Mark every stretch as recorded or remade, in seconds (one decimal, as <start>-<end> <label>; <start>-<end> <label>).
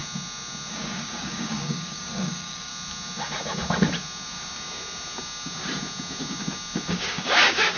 0.0-0.7 recorded; 0.7-2.7 remade; 2.7-6.9 recorded; 6.9-7.8 remade